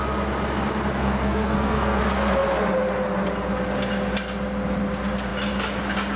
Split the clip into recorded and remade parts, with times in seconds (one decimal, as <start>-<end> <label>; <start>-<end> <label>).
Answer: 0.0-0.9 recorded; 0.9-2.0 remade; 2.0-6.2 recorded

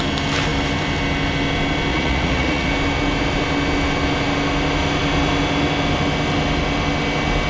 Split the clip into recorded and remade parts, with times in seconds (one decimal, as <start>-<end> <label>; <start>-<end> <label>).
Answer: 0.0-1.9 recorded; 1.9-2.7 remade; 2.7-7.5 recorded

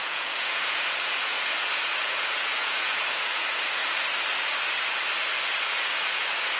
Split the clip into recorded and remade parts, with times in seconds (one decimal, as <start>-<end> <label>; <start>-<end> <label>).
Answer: 0.0-3.8 remade; 3.8-5.6 recorded; 5.6-6.6 remade

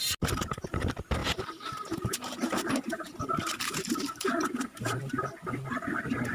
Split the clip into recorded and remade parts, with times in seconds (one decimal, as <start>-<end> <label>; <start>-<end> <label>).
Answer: 0.0-1.2 recorded; 1.2-5.0 remade; 5.0-6.3 recorded